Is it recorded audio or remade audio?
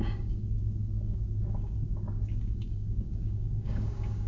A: remade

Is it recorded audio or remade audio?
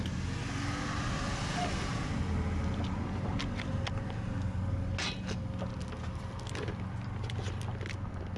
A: recorded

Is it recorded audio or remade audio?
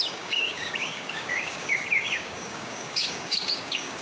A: remade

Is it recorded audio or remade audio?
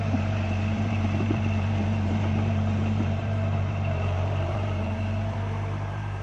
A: remade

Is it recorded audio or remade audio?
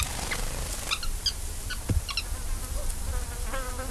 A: recorded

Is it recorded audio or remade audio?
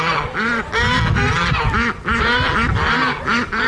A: recorded